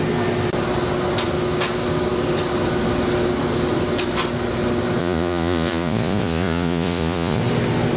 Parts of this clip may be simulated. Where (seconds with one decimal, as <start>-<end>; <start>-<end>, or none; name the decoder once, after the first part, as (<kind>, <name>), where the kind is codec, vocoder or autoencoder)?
5.0-7.4 (vocoder, Vocos)